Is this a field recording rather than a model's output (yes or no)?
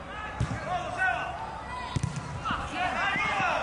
yes